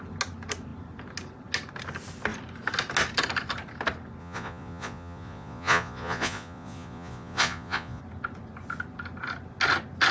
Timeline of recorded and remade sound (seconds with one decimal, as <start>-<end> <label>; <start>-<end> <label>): 0.0-4.2 recorded; 4.2-8.0 remade; 8.0-10.1 recorded